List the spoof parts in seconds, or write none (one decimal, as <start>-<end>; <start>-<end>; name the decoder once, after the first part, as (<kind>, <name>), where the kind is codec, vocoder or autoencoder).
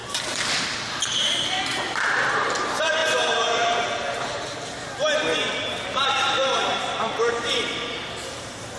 0.0-8.8 (vocoder, BigVGAN v2)